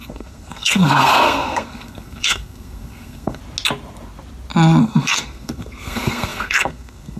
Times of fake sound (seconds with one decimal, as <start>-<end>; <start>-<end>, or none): 0.0-3.4; 4.8-7.2